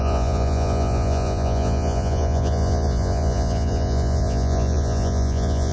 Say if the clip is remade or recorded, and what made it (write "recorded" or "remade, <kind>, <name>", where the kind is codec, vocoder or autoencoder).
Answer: remade, vocoder, Vocos